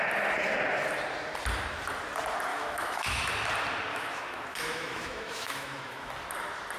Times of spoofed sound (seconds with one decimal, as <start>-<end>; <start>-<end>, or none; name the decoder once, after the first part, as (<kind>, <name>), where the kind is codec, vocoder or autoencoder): 2.5-3.3 (autoencoder, DAC-VAE); 3.9-6.1